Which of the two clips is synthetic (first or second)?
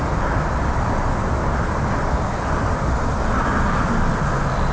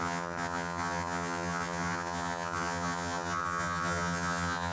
second